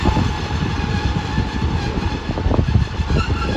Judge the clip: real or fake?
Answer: real